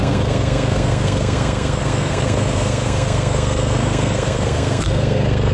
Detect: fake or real fake